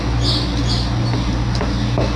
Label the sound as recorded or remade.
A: recorded